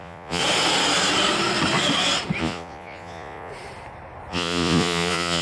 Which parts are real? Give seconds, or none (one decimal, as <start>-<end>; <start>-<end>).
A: 0.4-2.4; 3.5-4.3